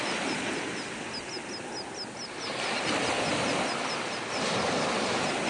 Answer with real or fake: real